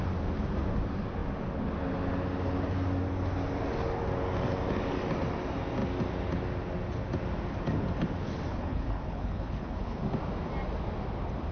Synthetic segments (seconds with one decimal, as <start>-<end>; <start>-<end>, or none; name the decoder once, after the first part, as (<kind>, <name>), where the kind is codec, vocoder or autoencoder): 8.5-10.0 (codec, HILCodec)